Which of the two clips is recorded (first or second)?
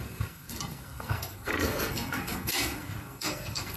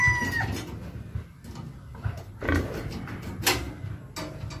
second